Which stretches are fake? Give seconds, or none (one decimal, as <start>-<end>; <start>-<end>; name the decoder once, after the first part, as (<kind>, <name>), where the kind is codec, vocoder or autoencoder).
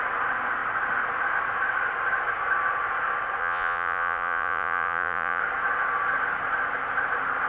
3.4-5.4 (vocoder, Vocos)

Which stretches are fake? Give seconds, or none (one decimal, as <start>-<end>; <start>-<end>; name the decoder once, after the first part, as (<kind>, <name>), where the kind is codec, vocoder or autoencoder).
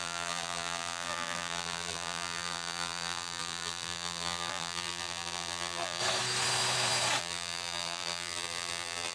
0.0-6.0 (vocoder, BigVGAN v2); 7.2-9.1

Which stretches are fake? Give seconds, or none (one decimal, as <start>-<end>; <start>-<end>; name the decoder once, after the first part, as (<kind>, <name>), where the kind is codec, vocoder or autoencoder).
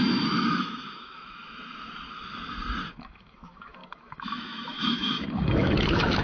0.0-1.4 (autoencoder, DAC-VAE); 2.9-6.2